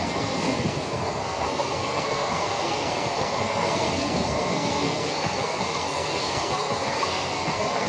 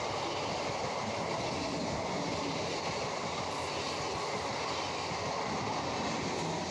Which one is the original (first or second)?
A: second